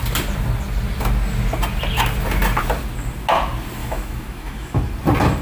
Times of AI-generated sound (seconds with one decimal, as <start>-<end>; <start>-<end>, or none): 3.8-4.8